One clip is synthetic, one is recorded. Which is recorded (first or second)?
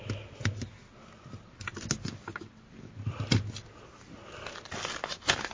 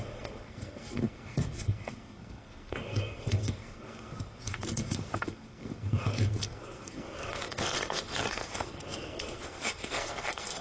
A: first